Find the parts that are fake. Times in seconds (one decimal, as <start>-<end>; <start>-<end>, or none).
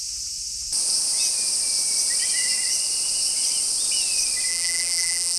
4.5-5.4